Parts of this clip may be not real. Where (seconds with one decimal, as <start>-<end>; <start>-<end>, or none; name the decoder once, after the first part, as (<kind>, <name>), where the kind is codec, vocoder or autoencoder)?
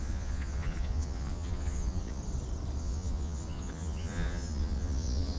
0.0-2.2 (vocoder, Vocos); 2.8-5.4